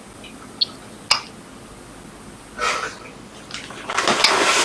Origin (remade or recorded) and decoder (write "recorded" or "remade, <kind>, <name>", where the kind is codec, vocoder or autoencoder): recorded